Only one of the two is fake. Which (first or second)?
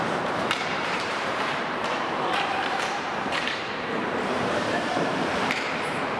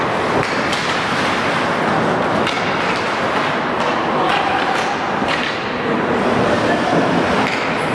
first